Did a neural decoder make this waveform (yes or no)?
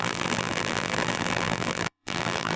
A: yes